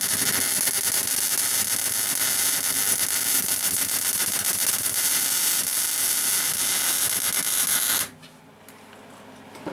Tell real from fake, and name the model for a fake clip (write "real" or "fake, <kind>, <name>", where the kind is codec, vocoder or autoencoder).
real